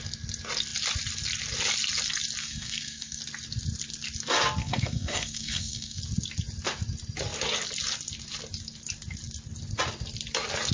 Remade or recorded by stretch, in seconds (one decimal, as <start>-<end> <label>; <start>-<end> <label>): 0.0-2.4 recorded; 2.4-3.2 remade; 3.2-4.6 recorded; 4.6-6.0 remade; 6.0-10.7 recorded